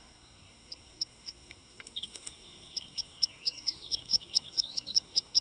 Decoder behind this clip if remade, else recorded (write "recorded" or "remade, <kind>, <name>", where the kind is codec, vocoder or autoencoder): remade, codec, SNAC